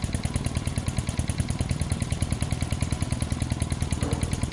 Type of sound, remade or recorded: recorded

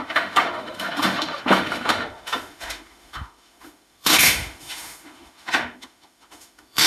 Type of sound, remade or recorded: remade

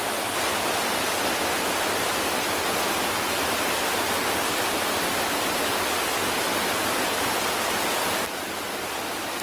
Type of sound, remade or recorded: recorded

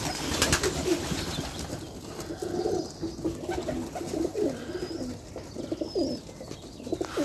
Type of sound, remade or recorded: recorded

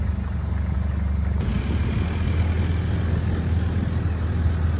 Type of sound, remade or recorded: recorded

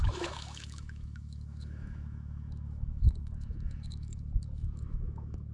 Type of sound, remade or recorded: remade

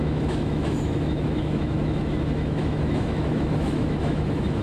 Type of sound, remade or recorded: remade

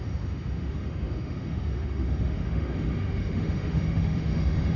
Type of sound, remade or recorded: remade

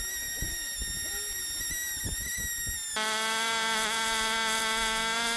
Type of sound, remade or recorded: recorded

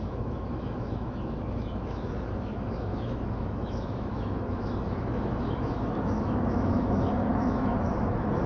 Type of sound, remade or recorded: remade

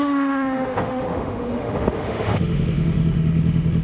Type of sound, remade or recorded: remade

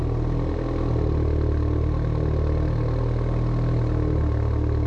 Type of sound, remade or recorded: recorded